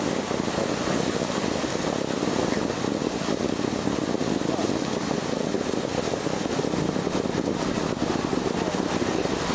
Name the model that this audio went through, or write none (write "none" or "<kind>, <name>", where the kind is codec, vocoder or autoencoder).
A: none